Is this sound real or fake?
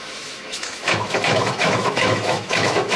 fake